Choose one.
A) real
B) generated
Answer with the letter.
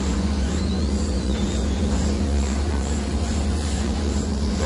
B